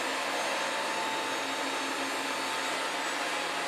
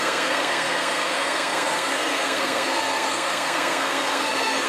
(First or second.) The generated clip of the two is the second